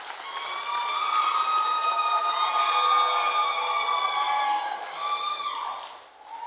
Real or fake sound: real